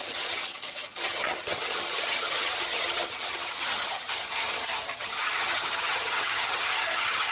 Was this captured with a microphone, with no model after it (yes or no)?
no